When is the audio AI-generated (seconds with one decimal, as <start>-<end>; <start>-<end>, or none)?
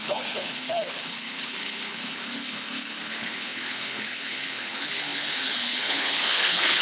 0.0-6.8